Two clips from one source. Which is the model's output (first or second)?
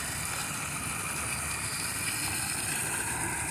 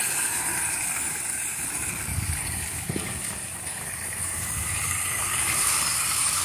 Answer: second